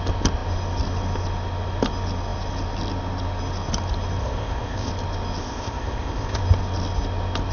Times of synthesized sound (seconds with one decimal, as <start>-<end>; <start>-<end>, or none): 4.2-4.9; 5.4-6.4